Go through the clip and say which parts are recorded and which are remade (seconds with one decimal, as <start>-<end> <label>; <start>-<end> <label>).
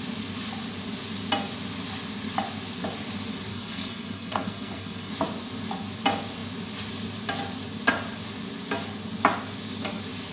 0.0-3.5 recorded; 3.5-5.1 remade; 5.1-10.3 recorded